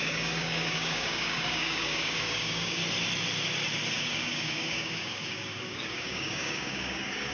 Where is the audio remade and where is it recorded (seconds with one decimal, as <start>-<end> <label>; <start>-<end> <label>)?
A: 0.0-2.8 remade; 2.8-3.9 recorded; 3.9-7.3 remade